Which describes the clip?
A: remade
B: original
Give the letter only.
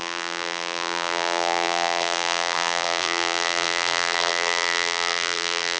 A